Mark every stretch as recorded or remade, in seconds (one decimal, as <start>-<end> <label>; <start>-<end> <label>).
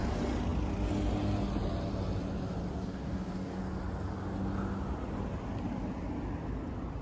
0.0-2.7 recorded; 2.7-3.6 remade; 3.6-7.0 recorded